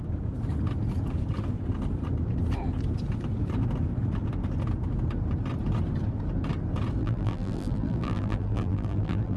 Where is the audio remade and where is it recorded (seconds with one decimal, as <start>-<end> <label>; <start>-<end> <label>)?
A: 0.0-7.0 recorded; 7.0-9.4 remade